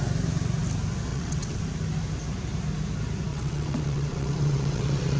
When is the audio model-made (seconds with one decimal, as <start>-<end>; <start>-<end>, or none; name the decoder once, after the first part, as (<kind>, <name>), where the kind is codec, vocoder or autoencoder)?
1.1-1.6 (vocoder, WaveNeXt); 3.3-5.2